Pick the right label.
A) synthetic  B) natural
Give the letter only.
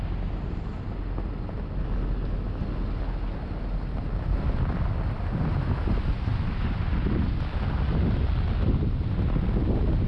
B